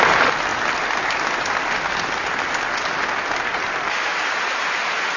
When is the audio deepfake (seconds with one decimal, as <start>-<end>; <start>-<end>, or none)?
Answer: none